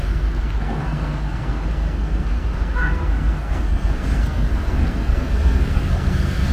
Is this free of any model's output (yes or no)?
no